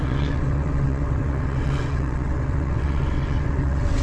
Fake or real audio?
fake